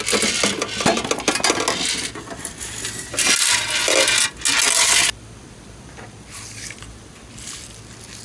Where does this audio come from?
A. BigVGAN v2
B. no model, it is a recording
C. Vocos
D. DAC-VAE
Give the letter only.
B